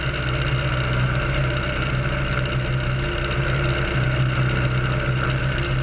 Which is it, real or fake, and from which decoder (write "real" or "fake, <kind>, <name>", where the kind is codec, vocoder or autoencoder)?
real